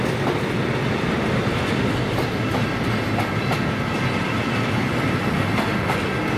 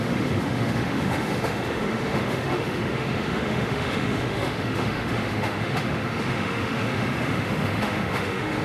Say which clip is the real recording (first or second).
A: first